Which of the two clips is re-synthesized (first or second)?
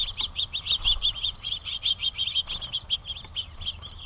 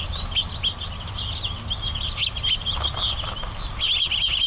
first